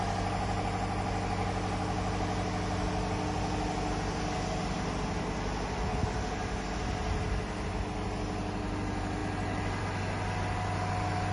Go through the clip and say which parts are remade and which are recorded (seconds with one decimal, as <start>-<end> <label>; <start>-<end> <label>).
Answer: 0.0-11.3 recorded

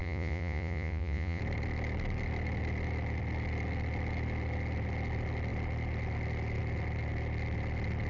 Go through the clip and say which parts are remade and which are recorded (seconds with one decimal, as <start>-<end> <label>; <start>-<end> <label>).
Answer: 0.0-1.4 remade; 1.4-8.1 recorded